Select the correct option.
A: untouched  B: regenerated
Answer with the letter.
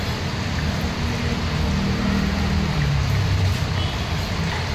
A